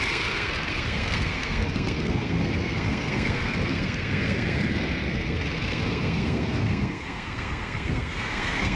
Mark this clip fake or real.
fake